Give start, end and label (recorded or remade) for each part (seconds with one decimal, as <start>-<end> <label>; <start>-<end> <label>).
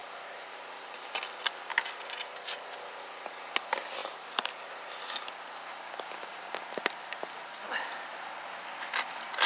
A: 0.0-1.2 remade; 1.2-4.0 recorded; 4.0-4.7 remade; 4.7-9.5 recorded